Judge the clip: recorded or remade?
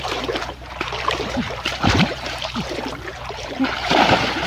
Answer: remade